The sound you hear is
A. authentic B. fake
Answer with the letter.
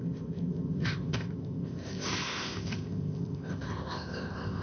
B